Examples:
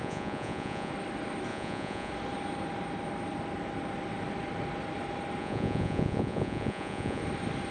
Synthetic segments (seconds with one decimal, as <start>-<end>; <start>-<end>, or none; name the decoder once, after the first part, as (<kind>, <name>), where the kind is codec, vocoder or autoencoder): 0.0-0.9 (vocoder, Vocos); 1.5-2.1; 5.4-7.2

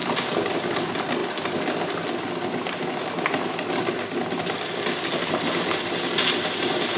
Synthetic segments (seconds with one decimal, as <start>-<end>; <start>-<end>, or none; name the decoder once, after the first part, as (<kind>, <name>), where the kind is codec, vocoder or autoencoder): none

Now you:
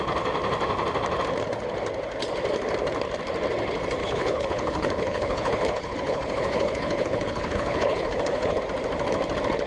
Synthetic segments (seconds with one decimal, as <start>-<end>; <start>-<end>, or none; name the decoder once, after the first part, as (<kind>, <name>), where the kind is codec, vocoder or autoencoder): 4.0-8.6 (codec, HILCodec)